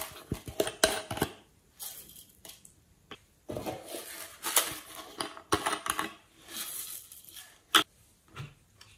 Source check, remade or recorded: recorded